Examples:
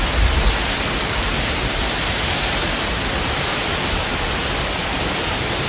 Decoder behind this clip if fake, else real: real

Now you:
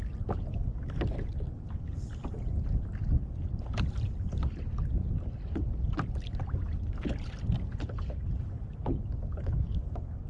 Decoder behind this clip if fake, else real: real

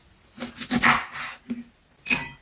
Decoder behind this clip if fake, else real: real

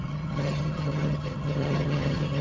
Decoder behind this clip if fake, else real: fake, vocoder, HiFi-GAN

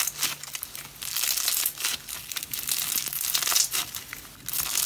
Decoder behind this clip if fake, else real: real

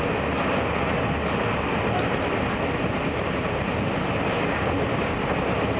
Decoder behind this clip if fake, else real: real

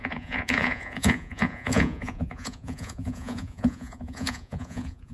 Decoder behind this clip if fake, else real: fake, vocoder, Vocos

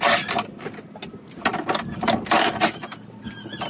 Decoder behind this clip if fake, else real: real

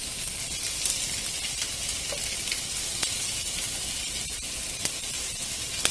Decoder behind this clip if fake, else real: real